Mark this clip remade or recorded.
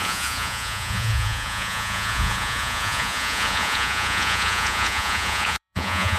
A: remade